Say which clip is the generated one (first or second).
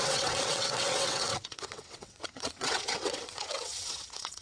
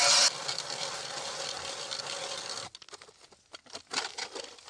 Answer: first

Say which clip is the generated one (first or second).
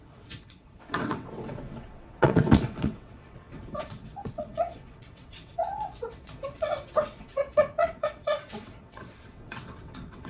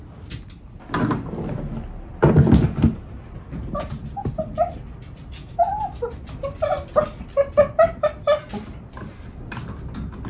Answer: first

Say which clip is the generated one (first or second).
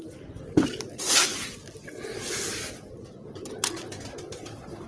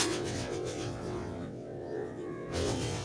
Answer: second